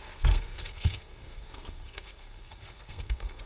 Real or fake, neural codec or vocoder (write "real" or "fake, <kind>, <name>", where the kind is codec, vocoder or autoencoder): fake, codec, SNAC